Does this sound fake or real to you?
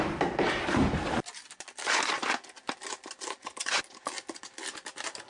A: real